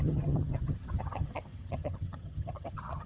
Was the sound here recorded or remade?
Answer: remade